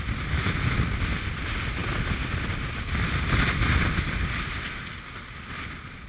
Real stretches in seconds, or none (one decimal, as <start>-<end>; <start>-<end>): 0.0-6.1